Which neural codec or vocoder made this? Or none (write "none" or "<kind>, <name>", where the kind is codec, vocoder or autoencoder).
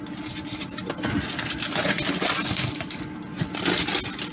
none